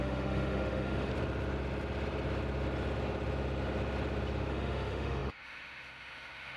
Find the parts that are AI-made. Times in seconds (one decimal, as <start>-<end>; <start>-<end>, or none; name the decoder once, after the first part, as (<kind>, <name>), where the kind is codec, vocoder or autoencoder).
0.0-1.1 (autoencoder, DAC-VAE); 4.5-6.6